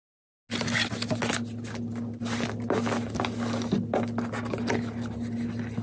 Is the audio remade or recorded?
recorded